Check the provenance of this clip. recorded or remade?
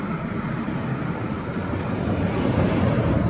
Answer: remade